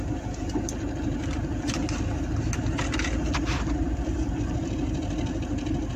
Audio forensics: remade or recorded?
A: recorded